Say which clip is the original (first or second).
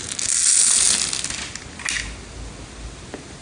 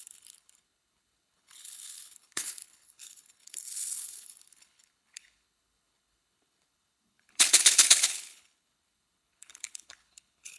first